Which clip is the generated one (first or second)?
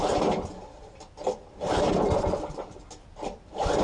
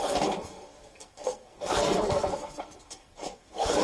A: second